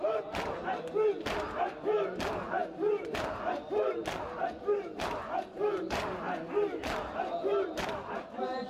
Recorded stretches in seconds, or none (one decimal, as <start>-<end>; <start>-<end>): 0.0-8.7